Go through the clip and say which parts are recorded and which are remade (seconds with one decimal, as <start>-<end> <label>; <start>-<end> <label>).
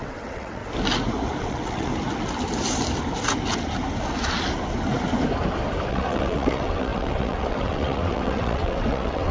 0.0-0.6 remade; 0.6-1.4 recorded; 1.4-1.9 remade; 1.9-5.9 recorded; 5.9-9.3 remade